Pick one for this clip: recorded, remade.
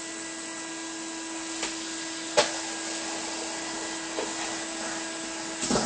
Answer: recorded